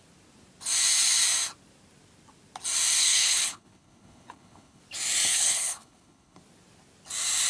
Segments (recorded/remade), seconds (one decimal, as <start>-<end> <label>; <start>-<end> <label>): 0.0-3.0 recorded; 3.0-4.8 remade; 4.8-5.3 recorded; 5.3-6.4 remade; 6.4-7.5 recorded